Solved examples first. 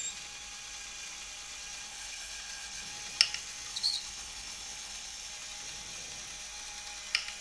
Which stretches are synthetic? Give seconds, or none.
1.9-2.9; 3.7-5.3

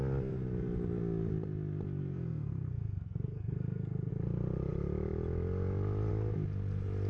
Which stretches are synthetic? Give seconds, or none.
2.0-4.1